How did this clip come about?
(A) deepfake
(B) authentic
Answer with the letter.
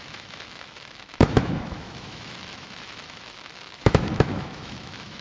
A